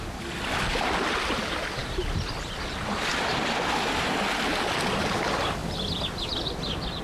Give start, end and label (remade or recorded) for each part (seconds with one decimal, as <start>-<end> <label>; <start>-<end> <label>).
0.0-7.0 recorded